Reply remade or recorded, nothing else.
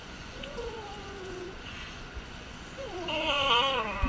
remade